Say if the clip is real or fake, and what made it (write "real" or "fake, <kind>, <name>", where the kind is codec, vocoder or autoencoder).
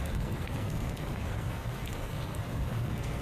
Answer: fake, codec, SNAC